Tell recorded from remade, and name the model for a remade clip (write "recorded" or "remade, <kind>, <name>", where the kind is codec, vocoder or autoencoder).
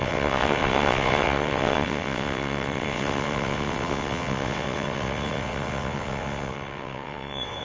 remade, vocoder, WaveNeXt